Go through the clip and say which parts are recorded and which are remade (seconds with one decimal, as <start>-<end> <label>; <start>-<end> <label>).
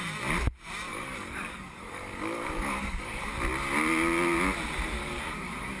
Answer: 0.0-0.9 recorded; 0.9-3.2 remade; 3.2-5.0 recorded; 5.0-5.8 remade